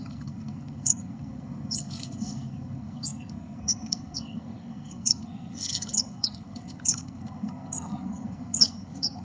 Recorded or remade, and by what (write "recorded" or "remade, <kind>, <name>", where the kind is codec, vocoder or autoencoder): remade, codec, SNAC